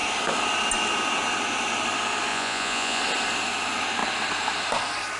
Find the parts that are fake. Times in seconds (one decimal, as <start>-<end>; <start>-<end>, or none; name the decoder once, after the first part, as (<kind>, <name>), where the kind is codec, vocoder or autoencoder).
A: 2.3-3.0 (vocoder, Vocos)